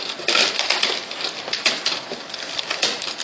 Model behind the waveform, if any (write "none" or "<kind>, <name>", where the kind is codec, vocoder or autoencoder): none